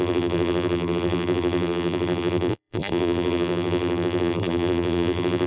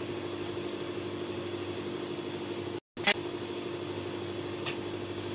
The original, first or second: second